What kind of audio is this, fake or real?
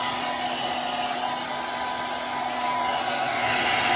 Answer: real